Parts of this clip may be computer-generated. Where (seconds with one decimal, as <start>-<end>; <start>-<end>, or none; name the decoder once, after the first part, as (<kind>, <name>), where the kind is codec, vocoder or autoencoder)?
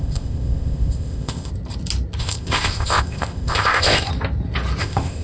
0.0-1.5 (codec, ZipCodec); 2.2-4.1; 4.8-5.2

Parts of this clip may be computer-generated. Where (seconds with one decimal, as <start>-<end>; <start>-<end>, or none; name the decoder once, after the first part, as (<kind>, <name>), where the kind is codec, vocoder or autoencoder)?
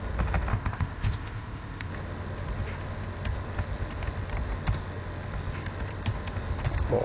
0.5-1.9 (codec, ZipCodec)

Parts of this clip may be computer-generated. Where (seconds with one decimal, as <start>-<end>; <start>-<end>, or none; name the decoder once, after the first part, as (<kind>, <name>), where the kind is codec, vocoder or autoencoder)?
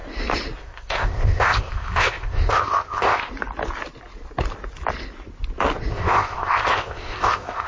0.6-3.3 (codec, ZipCodec); 5.9-7.7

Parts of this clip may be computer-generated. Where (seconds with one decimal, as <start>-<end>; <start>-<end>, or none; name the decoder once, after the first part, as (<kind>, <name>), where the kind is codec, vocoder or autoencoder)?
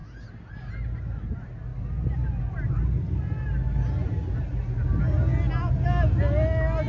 none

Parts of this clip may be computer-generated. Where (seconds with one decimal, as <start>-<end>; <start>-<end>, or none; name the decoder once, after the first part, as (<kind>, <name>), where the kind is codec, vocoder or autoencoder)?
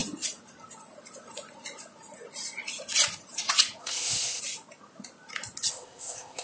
3.8-4.4 (codec, ZipCodec); 5.7-6.4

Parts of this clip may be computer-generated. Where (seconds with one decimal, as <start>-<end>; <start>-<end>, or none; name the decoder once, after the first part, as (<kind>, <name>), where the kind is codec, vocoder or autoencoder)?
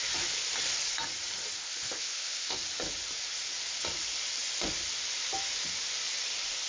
1.6-2.6 (codec, ZipCodec)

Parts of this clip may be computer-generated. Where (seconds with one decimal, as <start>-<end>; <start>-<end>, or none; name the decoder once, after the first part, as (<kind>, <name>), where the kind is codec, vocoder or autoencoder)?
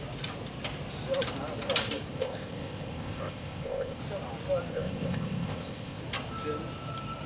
2.1-4.0 (codec, ZipCodec); 4.7-6.0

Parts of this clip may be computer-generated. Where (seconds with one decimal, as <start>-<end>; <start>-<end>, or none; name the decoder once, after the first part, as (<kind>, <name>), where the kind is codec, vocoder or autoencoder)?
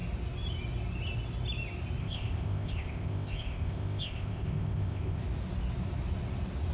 2.0-5.2 (codec, ZipCodec)